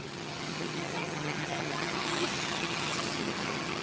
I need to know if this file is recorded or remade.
remade